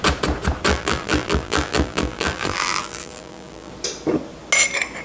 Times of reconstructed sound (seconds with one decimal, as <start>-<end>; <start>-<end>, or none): 0.7-3.7